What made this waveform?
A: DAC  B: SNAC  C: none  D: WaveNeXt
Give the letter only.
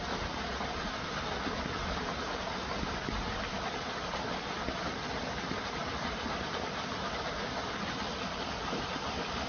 C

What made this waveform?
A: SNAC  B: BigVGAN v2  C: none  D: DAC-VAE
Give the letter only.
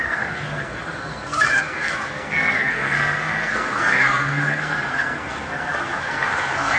A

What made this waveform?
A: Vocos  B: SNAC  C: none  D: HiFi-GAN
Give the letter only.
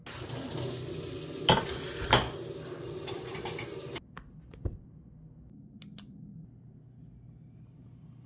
C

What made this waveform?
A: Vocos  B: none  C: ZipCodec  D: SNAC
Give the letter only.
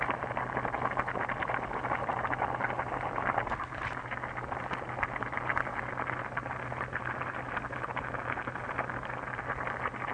B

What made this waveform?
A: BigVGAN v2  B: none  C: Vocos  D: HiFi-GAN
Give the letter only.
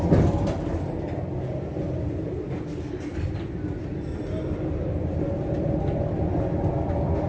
B